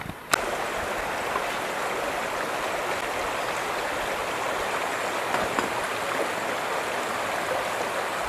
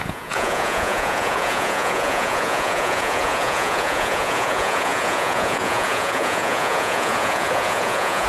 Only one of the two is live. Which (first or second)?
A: first